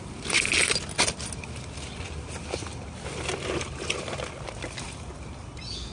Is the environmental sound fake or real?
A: real